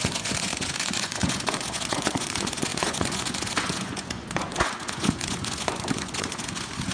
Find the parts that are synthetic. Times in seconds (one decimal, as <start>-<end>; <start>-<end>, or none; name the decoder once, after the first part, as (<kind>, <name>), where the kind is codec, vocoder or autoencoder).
0.0-6.9 (vocoder, Vocos)